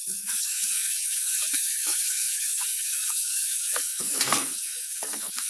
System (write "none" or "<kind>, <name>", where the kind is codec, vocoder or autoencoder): codec, SNAC